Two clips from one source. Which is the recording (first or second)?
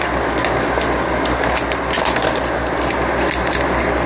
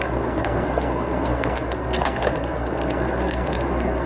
first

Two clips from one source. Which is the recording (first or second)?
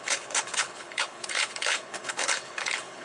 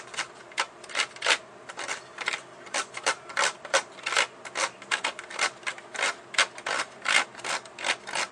second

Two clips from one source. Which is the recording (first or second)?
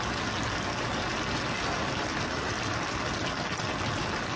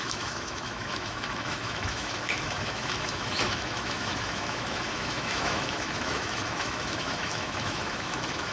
first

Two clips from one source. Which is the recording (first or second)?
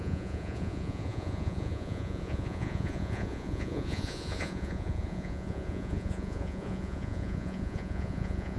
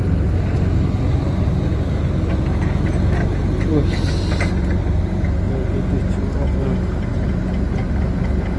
second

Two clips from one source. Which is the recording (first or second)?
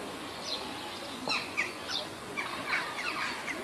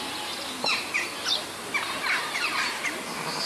second